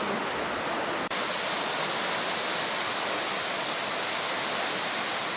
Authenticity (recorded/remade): recorded